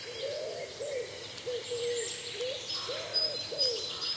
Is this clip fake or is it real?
fake